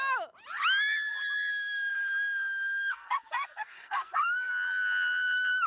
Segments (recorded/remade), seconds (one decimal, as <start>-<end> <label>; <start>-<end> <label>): 0.0-1.5 recorded; 1.5-4.5 remade; 4.5-5.7 recorded